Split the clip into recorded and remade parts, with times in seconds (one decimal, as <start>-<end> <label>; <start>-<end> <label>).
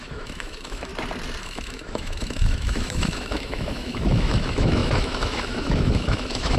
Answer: 0.0-0.9 remade; 0.9-1.4 recorded; 1.4-6.6 remade